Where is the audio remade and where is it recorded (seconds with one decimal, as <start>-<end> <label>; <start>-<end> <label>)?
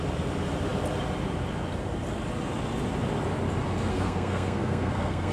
0.0-3.9 recorded; 3.9-5.3 remade